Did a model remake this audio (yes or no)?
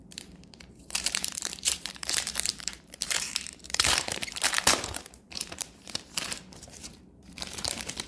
yes